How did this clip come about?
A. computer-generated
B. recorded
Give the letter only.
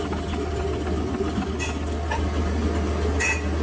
B